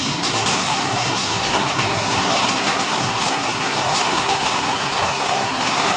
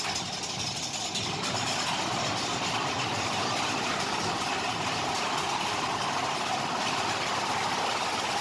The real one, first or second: second